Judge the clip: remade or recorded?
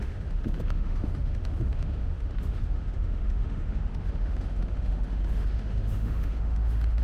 remade